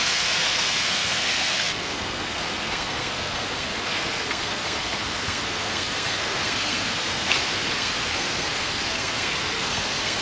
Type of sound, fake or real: fake